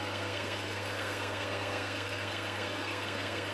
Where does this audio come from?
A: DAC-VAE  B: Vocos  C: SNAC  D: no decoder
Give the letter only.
C